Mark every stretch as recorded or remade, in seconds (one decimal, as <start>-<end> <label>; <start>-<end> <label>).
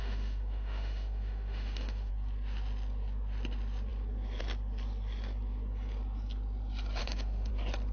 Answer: 0.0-2.1 remade; 2.1-7.0 recorded; 7.0-7.5 remade; 7.5-7.9 recorded